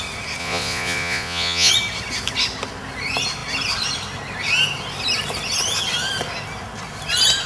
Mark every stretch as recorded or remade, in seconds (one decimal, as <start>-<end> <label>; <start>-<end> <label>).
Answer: 0.0-0.4 recorded; 0.4-1.7 remade; 1.7-7.5 recorded